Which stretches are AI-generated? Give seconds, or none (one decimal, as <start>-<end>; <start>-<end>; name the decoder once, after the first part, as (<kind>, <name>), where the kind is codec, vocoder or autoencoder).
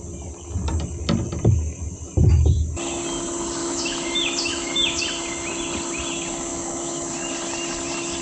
3.6-5.0 (autoencoder, DAC-VAE); 6.5-7.1